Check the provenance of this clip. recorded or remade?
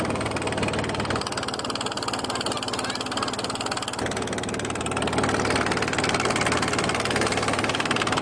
recorded